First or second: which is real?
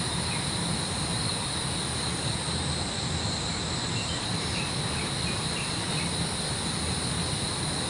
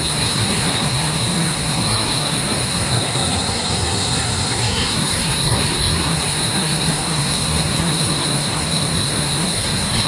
first